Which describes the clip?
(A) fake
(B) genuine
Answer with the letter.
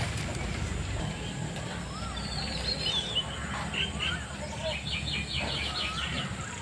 A